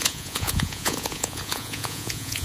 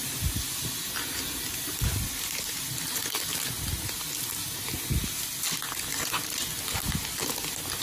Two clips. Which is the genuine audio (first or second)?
second